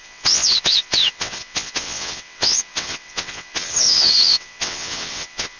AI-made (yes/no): yes